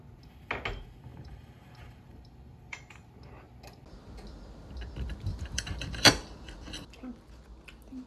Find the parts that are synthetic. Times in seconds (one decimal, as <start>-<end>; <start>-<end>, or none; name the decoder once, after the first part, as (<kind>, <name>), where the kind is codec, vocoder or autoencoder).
1.1-3.1 (vocoder, BigVGAN v2); 5.3-6.2